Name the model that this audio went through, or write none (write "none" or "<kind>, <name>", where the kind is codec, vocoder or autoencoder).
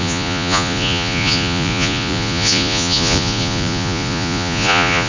vocoder, Vocos